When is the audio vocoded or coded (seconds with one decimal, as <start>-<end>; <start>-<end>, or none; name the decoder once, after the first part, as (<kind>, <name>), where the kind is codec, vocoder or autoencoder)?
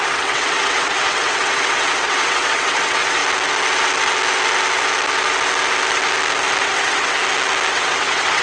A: 0.0-3.2 (vocoder, WaveNeXt); 6.6-7.2; 7.7-8.4